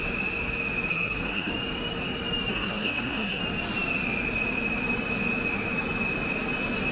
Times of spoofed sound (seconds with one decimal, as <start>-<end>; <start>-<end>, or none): 0.9-1.5; 2.5-3.4